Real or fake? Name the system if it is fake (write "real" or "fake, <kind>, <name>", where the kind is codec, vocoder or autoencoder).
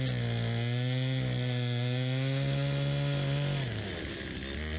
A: real